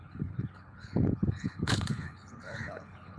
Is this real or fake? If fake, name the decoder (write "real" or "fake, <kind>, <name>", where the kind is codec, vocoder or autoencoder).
fake, codec, HILCodec